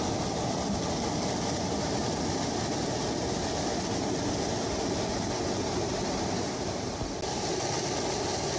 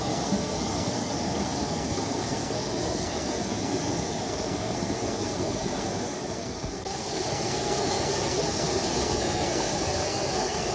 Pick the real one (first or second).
first